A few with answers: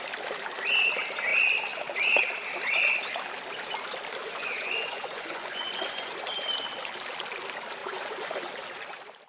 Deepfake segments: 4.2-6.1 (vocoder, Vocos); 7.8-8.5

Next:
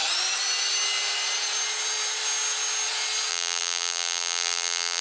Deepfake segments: 3.3-5.0 (vocoder, BigVGAN v2)

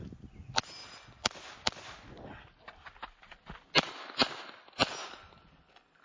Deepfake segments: none

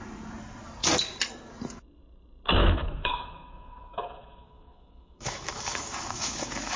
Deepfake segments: 2.6-6.8 (autoencoder, DAC-VAE)

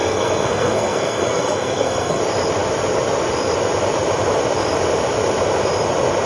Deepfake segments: 0.0-2.2 (codec, SNAC)

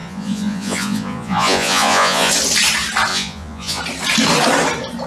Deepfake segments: 0.0-2.3 (vocoder, Vocos); 3.1-3.8

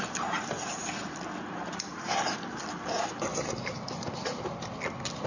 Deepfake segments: 1.9-2.4 (vocoder, BigVGAN v2); 3.3-4.5

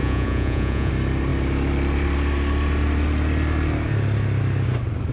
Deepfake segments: 0.0-0.9 (vocoder, Vocos)